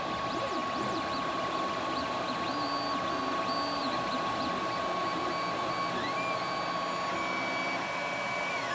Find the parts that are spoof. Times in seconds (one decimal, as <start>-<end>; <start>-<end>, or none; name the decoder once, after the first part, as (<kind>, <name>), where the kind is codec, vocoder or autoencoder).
none